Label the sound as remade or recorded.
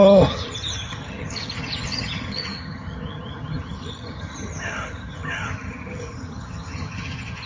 remade